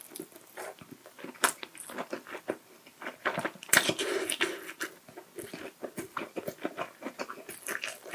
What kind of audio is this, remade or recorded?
recorded